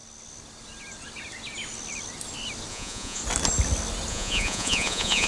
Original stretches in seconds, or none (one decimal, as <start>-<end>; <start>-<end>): 0.0-2.7; 3.2-4.1